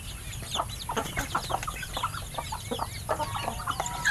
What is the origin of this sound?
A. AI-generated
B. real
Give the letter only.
B